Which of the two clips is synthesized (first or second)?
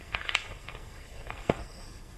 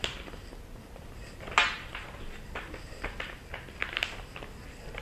first